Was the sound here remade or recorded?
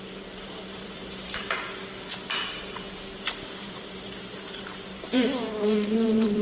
remade